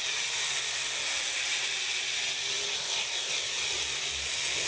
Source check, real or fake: real